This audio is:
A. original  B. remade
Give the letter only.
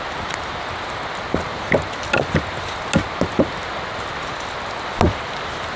A